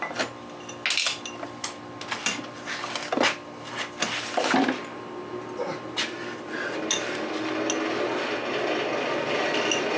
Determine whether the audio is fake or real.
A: real